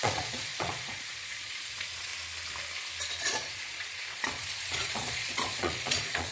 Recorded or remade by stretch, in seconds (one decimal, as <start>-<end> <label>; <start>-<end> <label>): 0.0-2.1 remade; 2.1-3.2 recorded; 3.2-6.3 remade